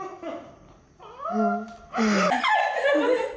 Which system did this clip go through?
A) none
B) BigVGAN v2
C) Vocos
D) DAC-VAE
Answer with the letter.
A